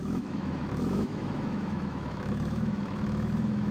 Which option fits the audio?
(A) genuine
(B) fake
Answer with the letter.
B